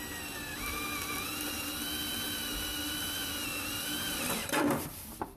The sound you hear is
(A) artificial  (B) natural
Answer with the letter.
B